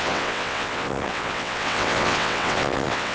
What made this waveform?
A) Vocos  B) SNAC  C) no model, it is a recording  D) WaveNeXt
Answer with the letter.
D